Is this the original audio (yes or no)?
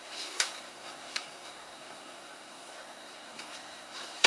no